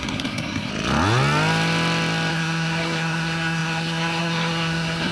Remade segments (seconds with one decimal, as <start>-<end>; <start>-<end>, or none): 0.0-0.7; 2.3-5.1